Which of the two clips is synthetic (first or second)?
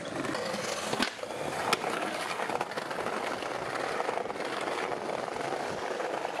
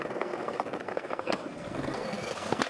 second